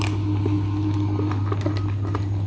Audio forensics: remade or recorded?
recorded